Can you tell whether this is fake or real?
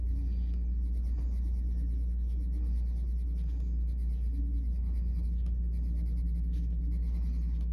real